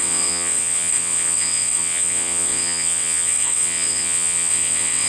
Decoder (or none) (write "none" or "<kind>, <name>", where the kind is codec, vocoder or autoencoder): vocoder, WaveNeXt